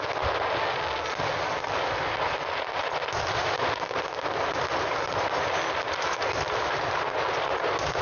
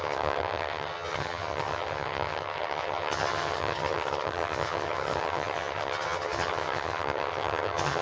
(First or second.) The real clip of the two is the first